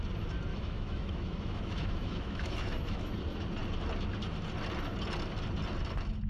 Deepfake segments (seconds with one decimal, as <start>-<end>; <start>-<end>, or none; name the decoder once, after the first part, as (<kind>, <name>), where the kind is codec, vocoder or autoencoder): 0.5-3.1 (autoencoder, DAC-VAE)